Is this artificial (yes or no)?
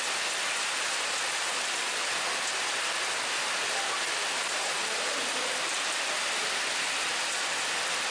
no